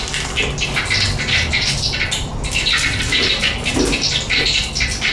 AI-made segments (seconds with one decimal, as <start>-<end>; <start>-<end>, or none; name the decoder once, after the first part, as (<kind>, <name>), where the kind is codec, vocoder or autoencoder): none

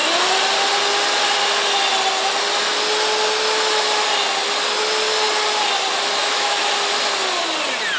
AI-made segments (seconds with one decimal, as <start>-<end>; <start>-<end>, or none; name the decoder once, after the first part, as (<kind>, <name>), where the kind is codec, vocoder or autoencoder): 6.2-6.7 (autoencoder, DAC-VAE)

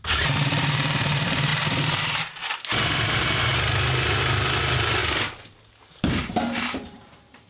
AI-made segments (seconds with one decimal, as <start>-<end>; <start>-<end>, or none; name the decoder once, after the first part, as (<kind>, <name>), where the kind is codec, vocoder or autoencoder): 0.0-3.5 (vocoder, BigVGAN v2); 4.6-5.0; 5.6-7.5

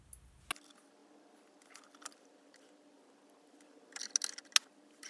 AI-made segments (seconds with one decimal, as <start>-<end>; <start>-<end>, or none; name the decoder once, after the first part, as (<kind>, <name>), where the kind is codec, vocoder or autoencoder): none